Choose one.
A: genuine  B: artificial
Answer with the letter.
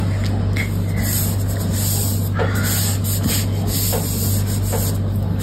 A